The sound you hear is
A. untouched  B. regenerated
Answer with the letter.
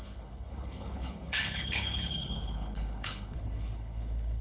B